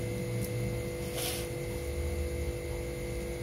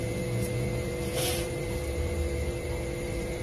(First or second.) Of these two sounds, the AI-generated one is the second